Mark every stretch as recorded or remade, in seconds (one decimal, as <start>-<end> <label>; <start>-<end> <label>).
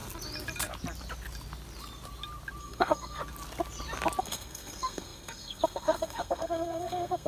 0.0-2.6 recorded; 2.6-3.2 remade; 3.2-4.2 recorded; 4.2-7.3 remade